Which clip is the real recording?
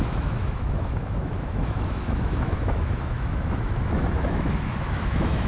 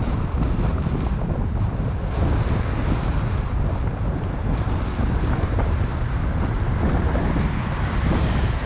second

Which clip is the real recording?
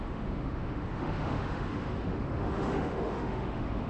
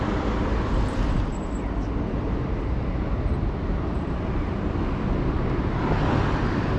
second